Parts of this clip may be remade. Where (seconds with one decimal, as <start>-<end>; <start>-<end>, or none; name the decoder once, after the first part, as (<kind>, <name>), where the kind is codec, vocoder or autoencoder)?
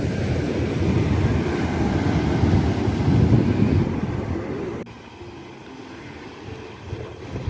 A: none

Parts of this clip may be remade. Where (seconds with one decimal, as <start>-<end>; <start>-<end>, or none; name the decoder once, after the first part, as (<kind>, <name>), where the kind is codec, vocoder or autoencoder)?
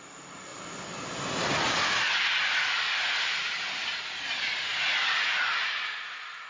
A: none